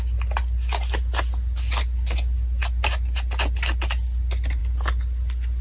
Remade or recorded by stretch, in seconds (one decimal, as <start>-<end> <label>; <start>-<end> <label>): 0.0-5.6 recorded